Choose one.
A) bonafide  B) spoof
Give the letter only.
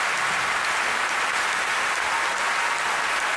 A